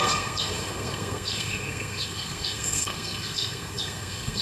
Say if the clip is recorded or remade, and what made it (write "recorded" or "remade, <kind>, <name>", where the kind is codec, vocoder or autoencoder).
remade, codec, SNAC